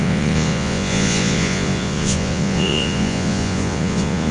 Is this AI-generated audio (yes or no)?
yes